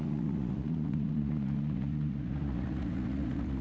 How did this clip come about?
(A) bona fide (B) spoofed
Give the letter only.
B